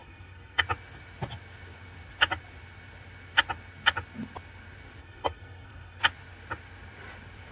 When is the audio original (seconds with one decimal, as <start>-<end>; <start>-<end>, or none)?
0.6-5.0; 6.0-7.5